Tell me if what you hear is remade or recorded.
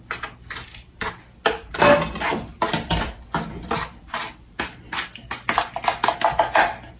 recorded